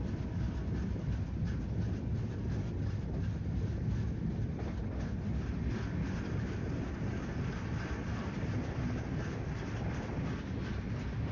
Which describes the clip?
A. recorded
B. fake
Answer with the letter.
A